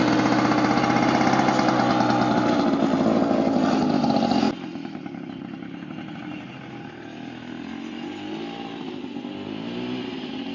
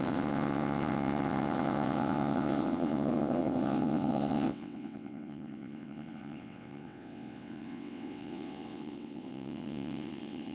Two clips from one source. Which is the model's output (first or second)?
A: second